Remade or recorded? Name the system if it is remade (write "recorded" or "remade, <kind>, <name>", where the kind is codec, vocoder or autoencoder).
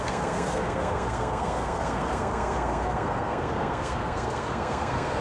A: remade, codec, SNAC